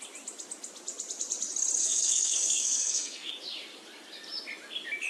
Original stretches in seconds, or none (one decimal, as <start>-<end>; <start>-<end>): 0.0-1.8; 3.3-5.1